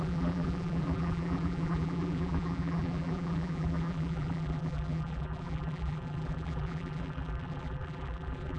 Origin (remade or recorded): remade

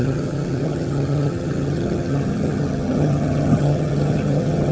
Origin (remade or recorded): remade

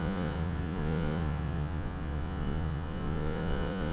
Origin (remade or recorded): remade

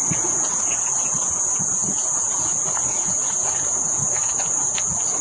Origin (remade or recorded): remade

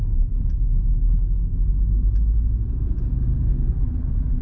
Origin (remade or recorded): recorded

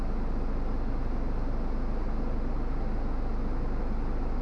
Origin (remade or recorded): recorded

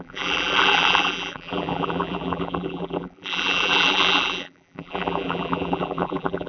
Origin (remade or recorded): remade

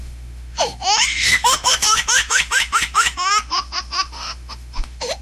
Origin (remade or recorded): remade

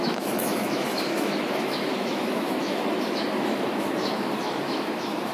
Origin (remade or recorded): remade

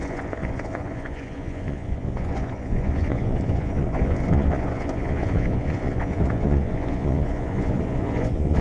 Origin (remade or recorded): remade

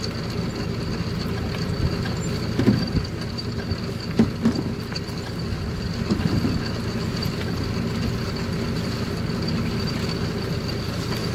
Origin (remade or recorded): recorded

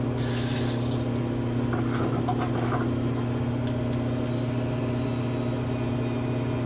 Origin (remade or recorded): recorded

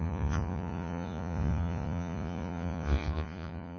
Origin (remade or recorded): remade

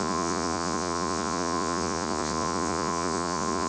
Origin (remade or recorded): remade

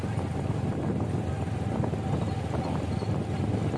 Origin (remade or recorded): recorded